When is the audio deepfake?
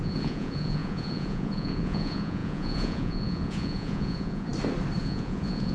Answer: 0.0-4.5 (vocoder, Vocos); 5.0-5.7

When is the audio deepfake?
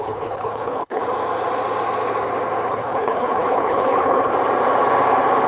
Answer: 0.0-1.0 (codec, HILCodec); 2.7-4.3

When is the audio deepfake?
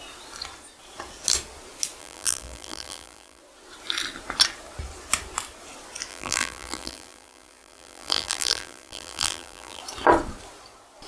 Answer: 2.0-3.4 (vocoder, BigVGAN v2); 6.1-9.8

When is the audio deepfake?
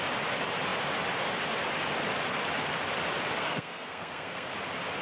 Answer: 3.4-4.5 (codec, SNAC)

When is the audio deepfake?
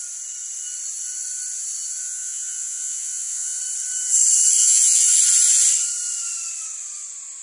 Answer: 2.0-3.6 (vocoder, Vocos); 4.6-5.1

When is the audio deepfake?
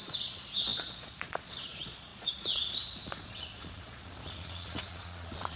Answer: 0.0-5.6 (vocoder, Vocos)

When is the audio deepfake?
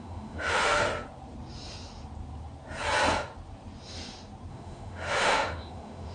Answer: 0.0-0.8 (autoencoder, DAC-VAE); 4.5-6.1